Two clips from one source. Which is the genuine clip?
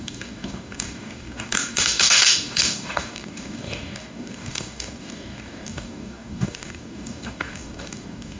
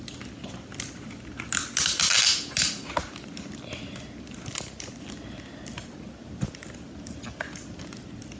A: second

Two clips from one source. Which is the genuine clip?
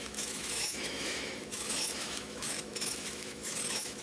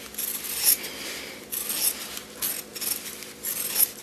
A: second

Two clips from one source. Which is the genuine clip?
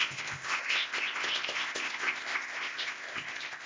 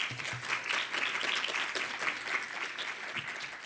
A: second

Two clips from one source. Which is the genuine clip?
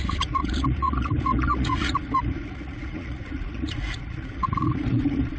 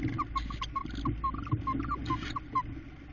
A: second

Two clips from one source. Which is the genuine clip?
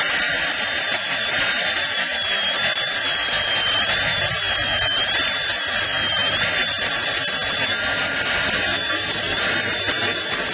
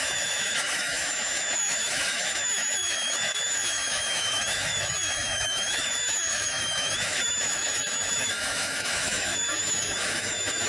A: first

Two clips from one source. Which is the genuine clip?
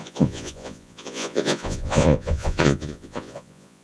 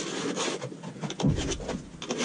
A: second